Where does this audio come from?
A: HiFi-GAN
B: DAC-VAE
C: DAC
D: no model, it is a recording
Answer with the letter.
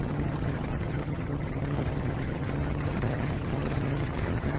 A